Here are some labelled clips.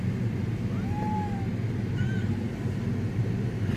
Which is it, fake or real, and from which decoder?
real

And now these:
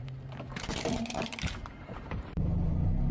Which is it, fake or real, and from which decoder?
fake, vocoder, BigVGAN v2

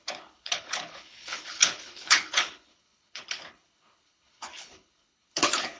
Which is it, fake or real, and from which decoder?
fake, codec, HILCodec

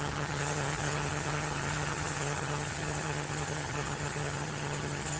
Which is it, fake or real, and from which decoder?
fake, vocoder, HiFi-GAN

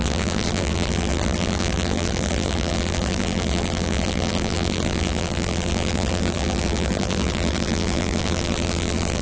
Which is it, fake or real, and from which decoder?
fake, vocoder, BigVGAN v2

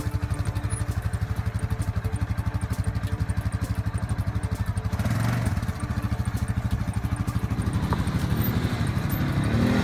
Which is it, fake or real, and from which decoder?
real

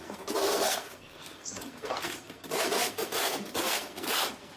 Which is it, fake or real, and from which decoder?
fake, codec, SNAC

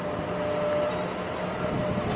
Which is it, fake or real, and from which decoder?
real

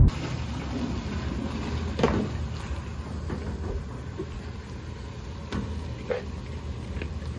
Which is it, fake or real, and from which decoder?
real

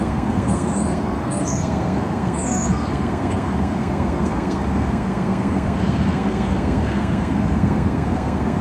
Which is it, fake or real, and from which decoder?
fake, codec, SNAC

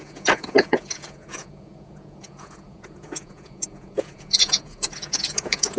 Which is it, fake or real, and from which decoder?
fake, vocoder, Vocos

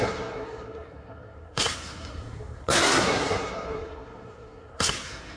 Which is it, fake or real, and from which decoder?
fake, codec, SNAC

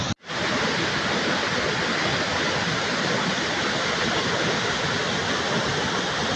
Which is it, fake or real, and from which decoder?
real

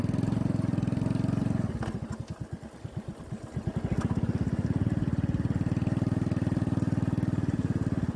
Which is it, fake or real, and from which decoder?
real